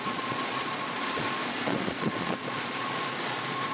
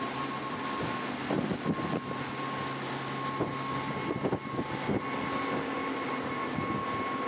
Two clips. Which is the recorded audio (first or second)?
second